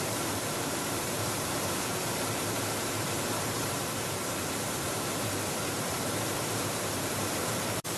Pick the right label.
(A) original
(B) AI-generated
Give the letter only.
B